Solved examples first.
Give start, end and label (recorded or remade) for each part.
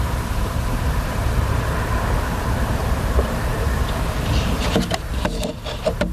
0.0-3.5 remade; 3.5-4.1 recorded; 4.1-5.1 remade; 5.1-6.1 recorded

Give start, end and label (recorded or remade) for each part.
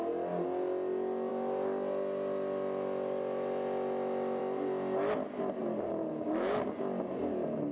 0.0-5.6 recorded; 5.6-6.1 remade; 6.1-7.7 recorded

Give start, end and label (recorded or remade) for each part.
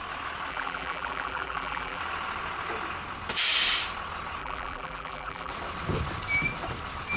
0.0-0.5 recorded; 0.5-2.0 remade; 2.0-4.4 recorded; 4.4-5.5 remade; 5.5-7.2 recorded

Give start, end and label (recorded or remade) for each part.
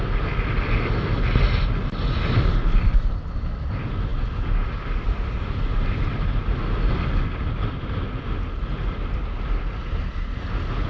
0.0-4.1 recorded; 4.1-6.4 remade; 6.4-10.9 recorded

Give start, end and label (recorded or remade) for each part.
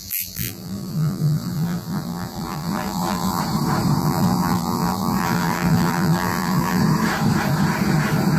0.0-3.4 remade; 3.4-4.0 recorded; 4.0-6.8 remade; 6.8-8.4 recorded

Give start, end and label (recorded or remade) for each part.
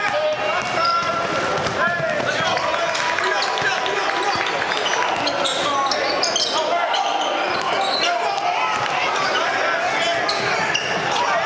0.0-0.5 recorded; 0.5-1.7 remade; 1.7-11.5 recorded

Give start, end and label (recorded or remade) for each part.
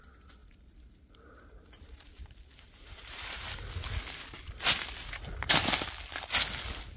0.0-0.4 recorded; 0.4-3.7 remade; 3.7-7.0 recorded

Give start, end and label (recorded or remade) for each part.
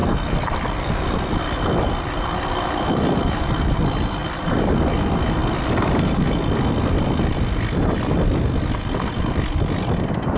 0.0-0.9 remade; 0.9-4.2 recorded; 4.2-4.8 remade; 4.8-10.4 recorded